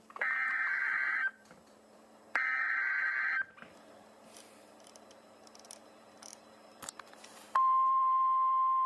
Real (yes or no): no